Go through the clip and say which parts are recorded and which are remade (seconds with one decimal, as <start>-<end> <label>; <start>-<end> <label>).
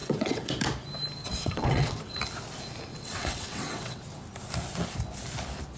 0.0-0.5 remade; 0.5-1.2 recorded; 1.2-2.2 remade; 2.2-2.9 recorded; 2.9-4.0 remade; 4.0-5.8 recorded